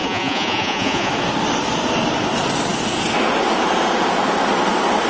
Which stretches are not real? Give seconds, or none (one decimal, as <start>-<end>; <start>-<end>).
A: 0.0-1.1